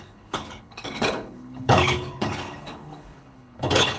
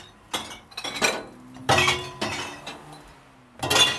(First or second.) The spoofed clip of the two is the first